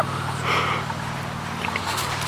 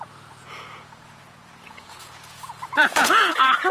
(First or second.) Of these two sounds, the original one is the first